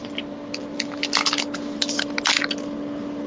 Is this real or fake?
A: real